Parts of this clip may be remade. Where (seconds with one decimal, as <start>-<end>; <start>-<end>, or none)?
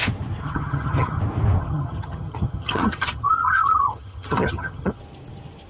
0.4-1.2; 1.6-5.0